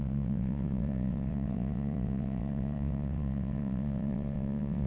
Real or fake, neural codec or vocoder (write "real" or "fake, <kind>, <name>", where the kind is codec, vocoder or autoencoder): fake, vocoder, WaveNeXt